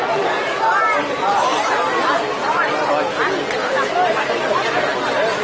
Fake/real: real